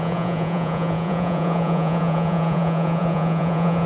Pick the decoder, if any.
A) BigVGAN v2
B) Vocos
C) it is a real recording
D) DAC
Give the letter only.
B